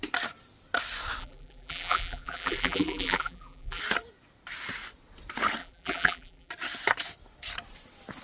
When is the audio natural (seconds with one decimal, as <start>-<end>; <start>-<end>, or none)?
0.0-1.2; 3.8-5.6; 6.5-8.2